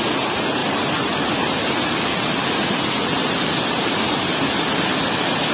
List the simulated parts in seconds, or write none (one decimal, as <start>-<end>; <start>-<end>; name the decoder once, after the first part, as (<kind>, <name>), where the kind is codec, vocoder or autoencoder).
none